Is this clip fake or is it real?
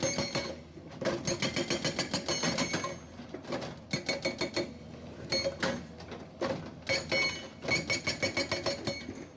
real